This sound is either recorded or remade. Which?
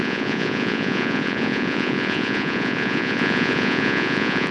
remade